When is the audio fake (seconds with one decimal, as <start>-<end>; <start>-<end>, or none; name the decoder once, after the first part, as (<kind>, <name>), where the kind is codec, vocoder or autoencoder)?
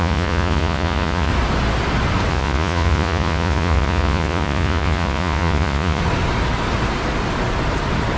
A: 0.0-1.3 (vocoder, Vocos); 2.3-6.0